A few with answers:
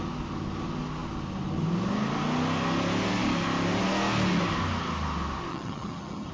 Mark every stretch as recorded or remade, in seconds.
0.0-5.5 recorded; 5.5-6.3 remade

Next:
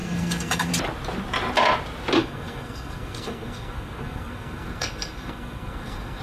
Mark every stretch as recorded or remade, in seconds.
0.0-0.7 remade; 0.7-2.2 recorded; 2.2-6.2 remade

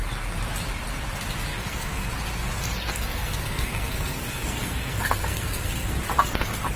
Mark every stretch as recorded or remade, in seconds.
0.0-1.5 recorded; 1.5-2.1 remade; 2.1-2.8 recorded; 2.8-6.0 remade; 6.0-6.8 recorded

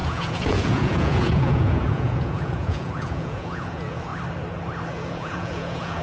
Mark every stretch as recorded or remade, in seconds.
0.0-4.1 remade; 4.1-4.9 recorded; 4.9-6.0 remade

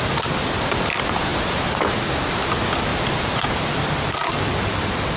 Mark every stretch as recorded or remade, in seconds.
0.0-2.9 recorded; 2.9-3.5 remade; 3.5-5.2 recorded

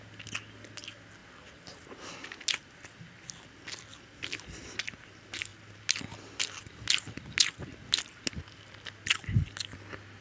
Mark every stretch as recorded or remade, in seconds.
0.0-10.2 recorded